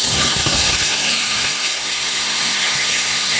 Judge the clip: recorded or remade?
remade